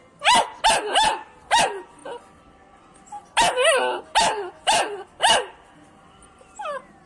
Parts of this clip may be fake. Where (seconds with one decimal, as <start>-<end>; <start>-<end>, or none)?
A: none